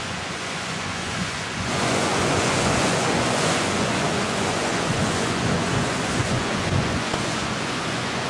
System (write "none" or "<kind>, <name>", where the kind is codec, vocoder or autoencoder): vocoder, Vocos